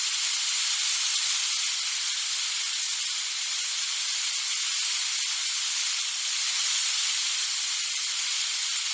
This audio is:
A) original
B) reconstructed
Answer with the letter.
A